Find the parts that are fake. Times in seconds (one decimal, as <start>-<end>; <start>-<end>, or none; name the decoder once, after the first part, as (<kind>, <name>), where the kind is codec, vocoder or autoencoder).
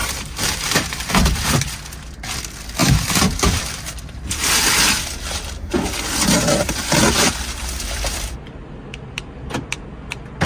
0.0-1.1 (vocoder, BigVGAN v2); 2.8-3.6